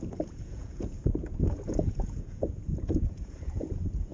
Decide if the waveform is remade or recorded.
remade